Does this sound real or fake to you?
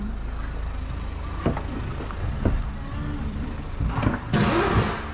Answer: real